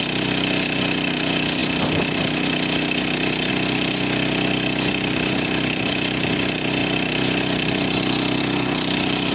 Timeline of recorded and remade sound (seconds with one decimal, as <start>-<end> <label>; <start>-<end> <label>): 0.0-9.3 recorded